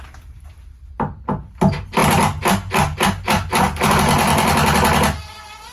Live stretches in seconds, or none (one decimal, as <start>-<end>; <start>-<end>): 0.0-5.7